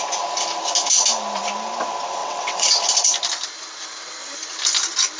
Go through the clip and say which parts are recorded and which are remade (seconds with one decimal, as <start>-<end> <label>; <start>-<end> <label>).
0.0-2.2 recorded; 2.2-2.8 remade; 2.8-5.2 recorded